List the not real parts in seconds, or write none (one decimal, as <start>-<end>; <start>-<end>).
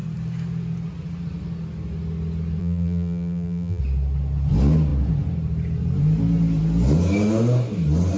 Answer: 2.6-3.8